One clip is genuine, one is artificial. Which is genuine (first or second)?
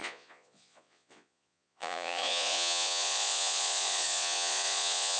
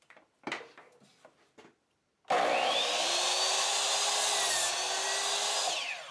second